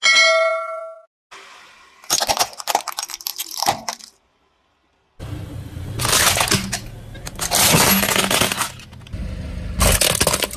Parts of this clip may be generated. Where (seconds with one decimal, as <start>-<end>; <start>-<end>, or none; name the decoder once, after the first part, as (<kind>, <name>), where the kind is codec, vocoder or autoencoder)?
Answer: 3.3-4.4 (vocoder, BigVGAN v2)